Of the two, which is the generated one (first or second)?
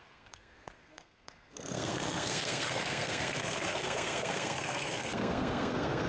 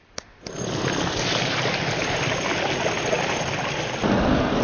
first